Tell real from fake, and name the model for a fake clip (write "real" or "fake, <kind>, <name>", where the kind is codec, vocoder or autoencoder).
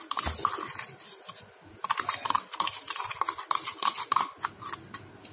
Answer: fake, vocoder, BigVGAN v2